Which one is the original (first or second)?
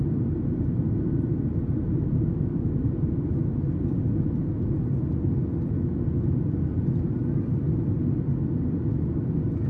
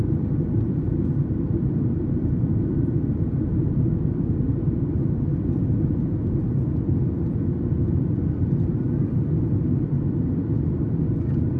first